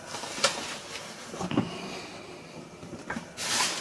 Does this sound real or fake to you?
real